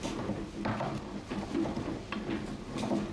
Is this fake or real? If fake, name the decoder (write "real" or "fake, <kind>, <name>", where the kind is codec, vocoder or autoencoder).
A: real